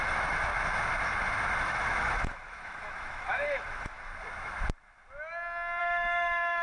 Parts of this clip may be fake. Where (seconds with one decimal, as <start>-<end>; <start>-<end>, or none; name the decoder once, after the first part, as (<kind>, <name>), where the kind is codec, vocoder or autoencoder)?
0.0-0.5 (autoencoder, DAC-VAE); 1.6-4.1; 5.8-6.6